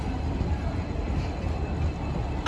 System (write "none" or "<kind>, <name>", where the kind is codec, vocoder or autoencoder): none